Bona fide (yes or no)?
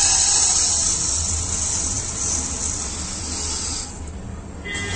yes